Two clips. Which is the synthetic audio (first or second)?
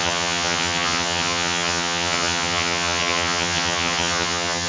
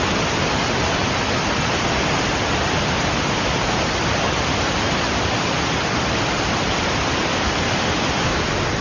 first